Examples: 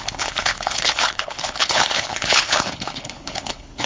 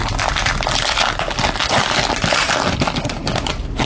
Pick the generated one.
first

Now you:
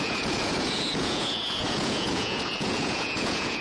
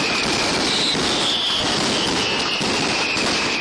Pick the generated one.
first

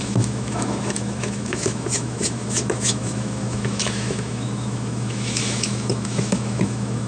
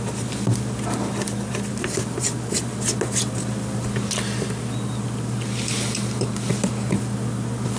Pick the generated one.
first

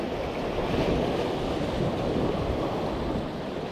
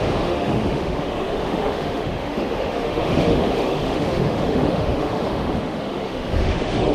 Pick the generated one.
second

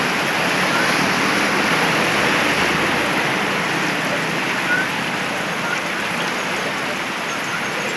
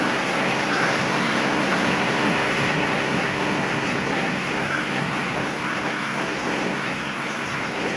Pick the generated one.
second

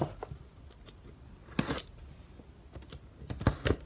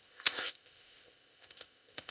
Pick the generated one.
second